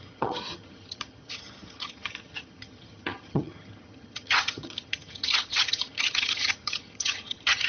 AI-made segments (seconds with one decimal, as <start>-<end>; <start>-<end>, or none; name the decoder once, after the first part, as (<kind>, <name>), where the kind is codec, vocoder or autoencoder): 0.0-7.7 (vocoder, HiFi-GAN)